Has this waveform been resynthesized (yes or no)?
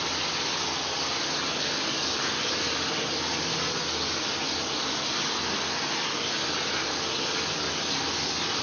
no